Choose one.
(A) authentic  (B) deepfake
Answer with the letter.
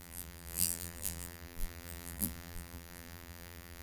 B